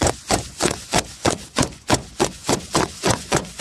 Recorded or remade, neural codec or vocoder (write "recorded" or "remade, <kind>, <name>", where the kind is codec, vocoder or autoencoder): remade, vocoder, Vocos